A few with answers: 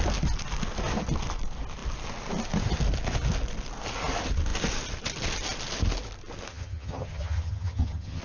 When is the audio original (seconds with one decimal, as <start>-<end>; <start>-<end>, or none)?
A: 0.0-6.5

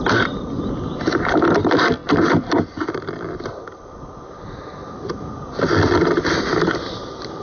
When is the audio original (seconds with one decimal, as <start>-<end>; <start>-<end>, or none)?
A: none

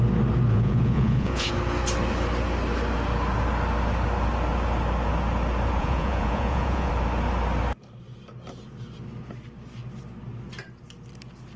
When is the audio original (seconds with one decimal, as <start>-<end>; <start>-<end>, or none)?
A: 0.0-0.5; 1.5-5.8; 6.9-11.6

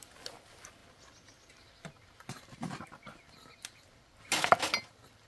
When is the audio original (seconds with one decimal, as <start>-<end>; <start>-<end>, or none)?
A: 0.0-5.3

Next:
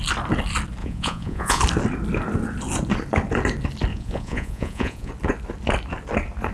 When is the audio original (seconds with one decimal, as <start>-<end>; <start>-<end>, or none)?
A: 0.0-0.8; 1.6-3.9; 5.1-6.5

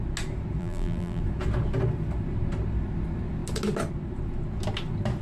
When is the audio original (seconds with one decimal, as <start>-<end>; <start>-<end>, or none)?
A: 0.0-0.6; 1.2-5.2

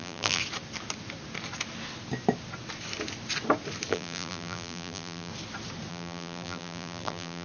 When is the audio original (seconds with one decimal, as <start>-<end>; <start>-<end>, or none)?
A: 0.4-3.9; 5.3-5.9

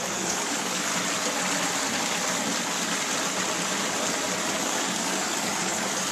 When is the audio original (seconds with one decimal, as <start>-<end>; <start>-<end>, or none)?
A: 0.9-4.6